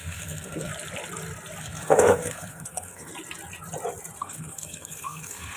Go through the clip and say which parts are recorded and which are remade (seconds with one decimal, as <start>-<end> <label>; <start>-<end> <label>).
0.0-0.7 remade; 0.7-1.6 recorded; 1.6-3.1 remade; 3.1-4.2 recorded; 4.2-5.6 remade